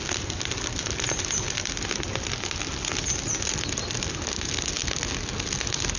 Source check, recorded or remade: recorded